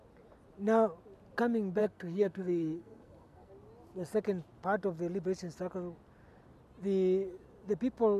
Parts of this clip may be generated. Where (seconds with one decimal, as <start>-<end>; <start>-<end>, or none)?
1.8-3.5